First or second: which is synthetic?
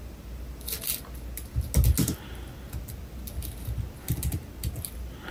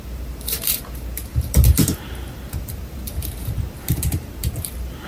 second